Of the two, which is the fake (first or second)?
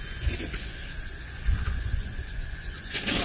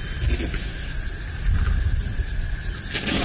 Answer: first